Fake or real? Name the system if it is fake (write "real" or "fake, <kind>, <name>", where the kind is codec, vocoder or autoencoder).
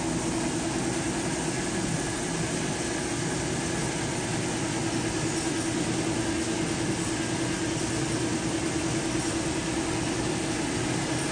real